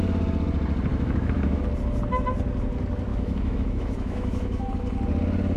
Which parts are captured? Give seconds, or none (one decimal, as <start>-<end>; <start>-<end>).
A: 0.0-0.9; 1.6-3.1; 4.7-5.6